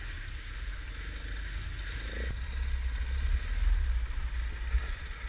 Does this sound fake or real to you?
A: real